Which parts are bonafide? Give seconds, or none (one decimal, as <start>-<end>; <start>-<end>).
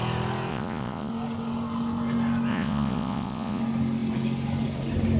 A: 0.0-0.5; 1.1-2.5; 3.6-5.2